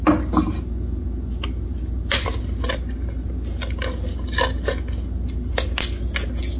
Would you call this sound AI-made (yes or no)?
no